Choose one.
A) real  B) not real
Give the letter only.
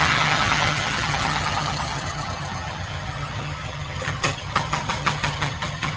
B